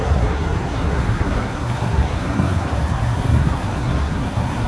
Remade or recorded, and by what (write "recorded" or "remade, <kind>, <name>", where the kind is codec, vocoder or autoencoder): remade, codec, SNAC